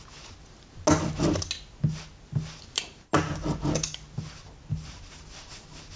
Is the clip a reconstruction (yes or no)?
no